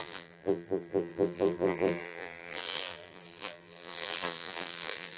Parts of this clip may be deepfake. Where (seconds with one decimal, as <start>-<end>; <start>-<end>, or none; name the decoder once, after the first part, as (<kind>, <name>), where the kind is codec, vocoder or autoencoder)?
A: 0.0-5.2 (vocoder, BigVGAN v2)